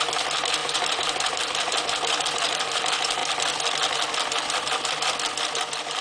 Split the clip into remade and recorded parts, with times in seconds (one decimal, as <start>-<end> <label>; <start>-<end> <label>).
0.0-3.2 remade; 3.2-6.0 recorded